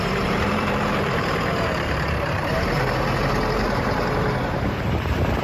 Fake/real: fake